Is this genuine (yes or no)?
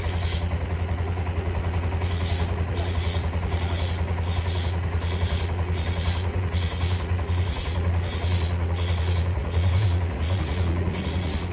no